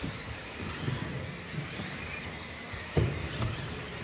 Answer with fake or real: real